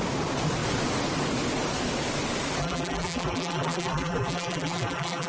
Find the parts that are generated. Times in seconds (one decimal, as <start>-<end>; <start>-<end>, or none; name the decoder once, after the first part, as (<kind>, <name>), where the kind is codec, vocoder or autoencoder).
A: 2.6-5.3 (vocoder, BigVGAN v2)